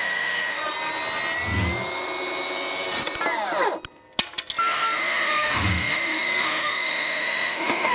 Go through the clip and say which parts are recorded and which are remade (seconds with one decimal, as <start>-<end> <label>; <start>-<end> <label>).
0.0-0.6 remade; 0.6-4.6 recorded; 4.6-7.9 remade